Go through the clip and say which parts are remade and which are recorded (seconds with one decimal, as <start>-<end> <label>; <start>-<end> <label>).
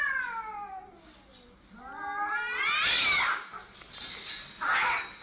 0.0-5.2 recorded